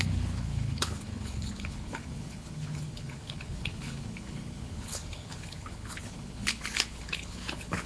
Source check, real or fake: fake